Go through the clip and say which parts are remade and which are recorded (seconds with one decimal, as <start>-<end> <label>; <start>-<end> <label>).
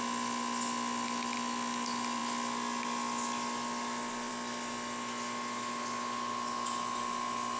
0.0-7.6 recorded